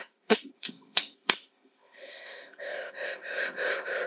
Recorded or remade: remade